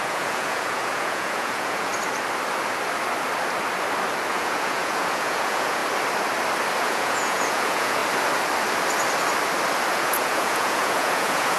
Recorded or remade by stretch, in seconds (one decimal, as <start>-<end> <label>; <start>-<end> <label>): 0.0-1.9 remade; 1.9-4.3 recorded; 4.3-5.8 remade; 5.8-6.8 recorded; 6.8-8.0 remade; 8.0-9.9 recorded; 9.9-11.6 remade